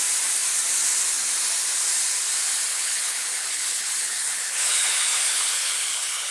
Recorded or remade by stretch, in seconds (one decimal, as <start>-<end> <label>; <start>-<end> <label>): 0.0-2.7 recorded; 2.7-6.3 remade